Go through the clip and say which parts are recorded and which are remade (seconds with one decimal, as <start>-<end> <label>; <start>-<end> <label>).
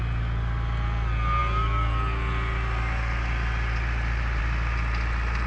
0.0-5.5 recorded